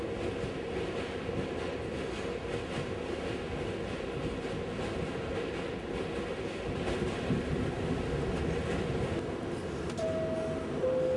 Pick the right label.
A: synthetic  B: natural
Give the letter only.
B